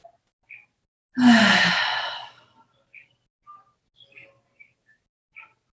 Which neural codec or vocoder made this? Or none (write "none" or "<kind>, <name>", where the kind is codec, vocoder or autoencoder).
none